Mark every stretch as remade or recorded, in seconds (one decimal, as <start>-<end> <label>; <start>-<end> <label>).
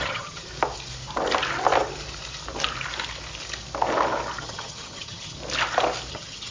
0.0-0.5 remade; 0.5-4.4 recorded; 4.4-5.4 remade; 5.4-6.1 recorded; 6.1-6.5 remade